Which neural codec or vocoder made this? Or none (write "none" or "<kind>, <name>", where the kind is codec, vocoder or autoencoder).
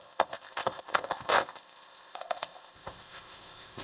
codec, ZipCodec